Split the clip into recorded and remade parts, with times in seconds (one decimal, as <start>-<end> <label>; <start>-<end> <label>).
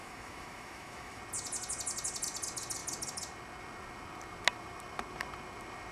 0.0-1.2 remade; 1.2-5.9 recorded